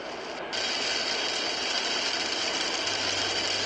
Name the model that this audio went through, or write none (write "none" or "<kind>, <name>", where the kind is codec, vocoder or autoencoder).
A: none